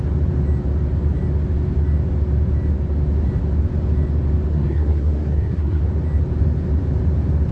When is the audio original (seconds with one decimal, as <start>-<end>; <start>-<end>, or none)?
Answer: 0.0-4.5; 5.8-7.5